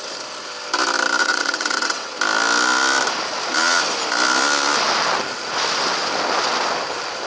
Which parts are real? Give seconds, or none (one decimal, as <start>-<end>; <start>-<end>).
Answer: 0.0-1.2; 2.1-7.3